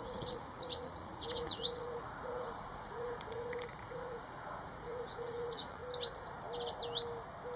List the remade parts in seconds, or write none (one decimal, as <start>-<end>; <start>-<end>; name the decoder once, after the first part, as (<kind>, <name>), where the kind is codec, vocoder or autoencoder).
0.0-5.8 (vocoder, Vocos)